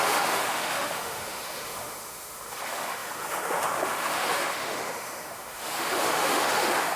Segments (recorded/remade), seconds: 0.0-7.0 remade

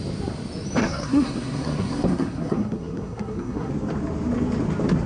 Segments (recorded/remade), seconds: 0.0-0.8 recorded; 0.8-3.7 remade; 3.7-5.1 recorded

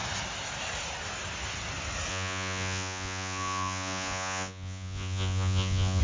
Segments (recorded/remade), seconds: 0.0-2.1 recorded; 2.1-6.0 remade